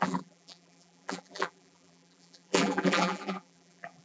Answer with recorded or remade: remade